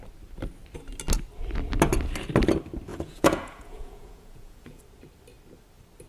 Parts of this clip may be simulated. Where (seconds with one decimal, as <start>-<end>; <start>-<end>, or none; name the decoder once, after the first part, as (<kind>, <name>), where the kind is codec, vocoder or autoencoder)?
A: 2.9-4.8 (vocoder, Vocos)